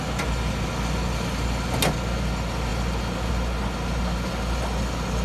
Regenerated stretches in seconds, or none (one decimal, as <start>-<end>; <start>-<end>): none